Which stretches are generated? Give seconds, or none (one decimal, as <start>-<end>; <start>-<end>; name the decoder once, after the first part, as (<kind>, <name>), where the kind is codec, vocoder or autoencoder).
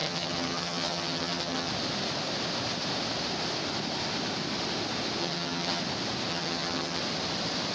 0.0-1.7 (vocoder, HiFi-GAN); 5.2-5.8; 6.3-7.0